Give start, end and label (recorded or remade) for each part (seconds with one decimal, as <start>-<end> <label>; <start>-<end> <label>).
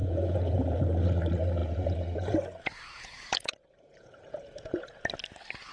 0.0-0.8 remade; 0.8-1.6 recorded; 1.6-5.0 remade; 5.0-5.7 recorded